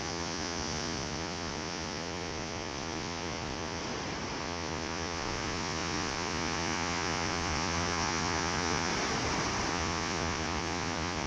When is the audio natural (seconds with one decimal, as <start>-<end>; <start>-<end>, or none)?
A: 3.8-4.4; 8.9-9.7